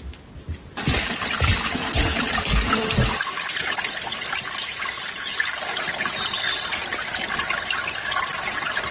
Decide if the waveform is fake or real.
real